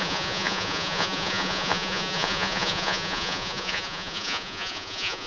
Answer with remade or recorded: remade